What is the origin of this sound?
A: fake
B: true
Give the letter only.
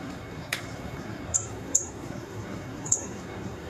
A